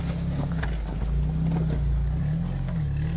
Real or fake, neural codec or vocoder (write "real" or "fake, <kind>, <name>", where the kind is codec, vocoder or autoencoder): real